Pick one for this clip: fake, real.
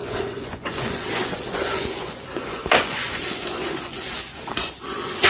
fake